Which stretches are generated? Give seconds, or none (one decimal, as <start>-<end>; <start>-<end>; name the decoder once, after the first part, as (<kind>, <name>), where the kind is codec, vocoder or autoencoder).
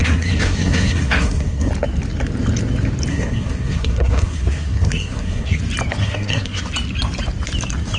0.0-1.7 (codec, SNAC); 3.1-5.6; 6.0-6.7